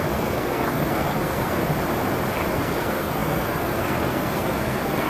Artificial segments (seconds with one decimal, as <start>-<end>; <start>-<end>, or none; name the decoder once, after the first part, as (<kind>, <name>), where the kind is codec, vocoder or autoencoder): 0.0-1.6 (codec, SNAC); 2.5-5.1